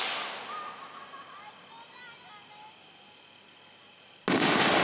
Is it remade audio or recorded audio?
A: recorded